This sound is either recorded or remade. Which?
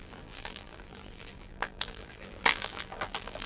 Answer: remade